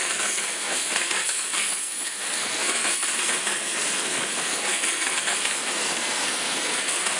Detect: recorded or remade remade